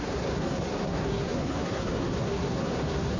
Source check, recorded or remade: remade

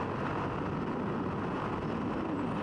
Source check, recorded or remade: recorded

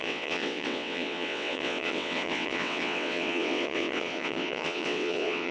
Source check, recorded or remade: remade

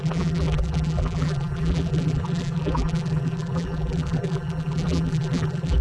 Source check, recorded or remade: remade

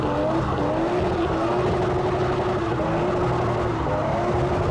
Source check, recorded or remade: recorded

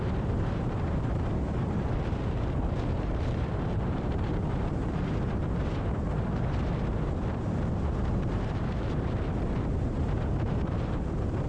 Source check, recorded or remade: remade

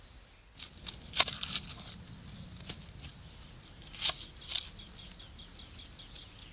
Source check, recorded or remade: recorded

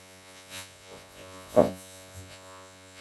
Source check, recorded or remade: remade